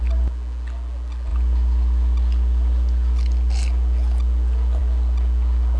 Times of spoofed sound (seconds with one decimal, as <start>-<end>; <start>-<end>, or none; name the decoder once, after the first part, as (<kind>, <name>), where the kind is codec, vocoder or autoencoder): none